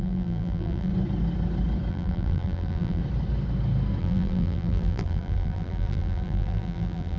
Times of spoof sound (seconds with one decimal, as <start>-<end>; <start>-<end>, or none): 0.0-0.9; 1.9-3.0; 4.0-7.2